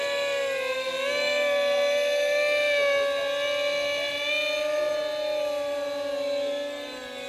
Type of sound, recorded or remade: recorded